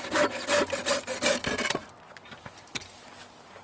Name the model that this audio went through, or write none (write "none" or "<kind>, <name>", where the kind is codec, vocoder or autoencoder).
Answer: none